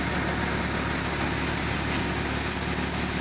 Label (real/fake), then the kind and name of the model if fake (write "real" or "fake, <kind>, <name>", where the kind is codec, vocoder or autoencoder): real